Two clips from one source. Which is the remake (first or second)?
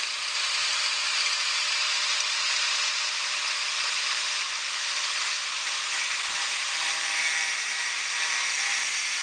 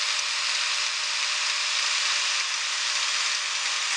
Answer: first